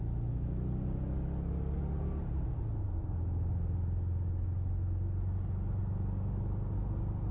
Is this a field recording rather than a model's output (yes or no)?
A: yes